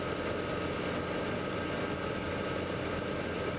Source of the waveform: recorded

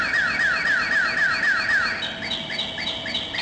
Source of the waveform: recorded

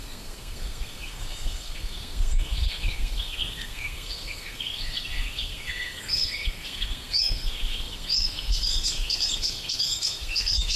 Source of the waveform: remade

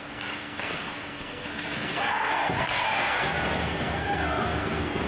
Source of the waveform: remade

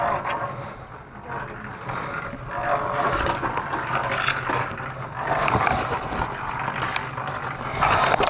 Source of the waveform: recorded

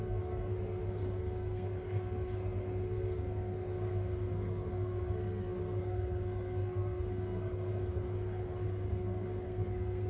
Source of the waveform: remade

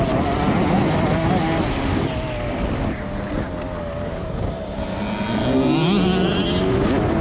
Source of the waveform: recorded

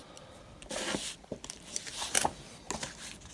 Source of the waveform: recorded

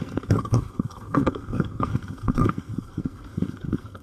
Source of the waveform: remade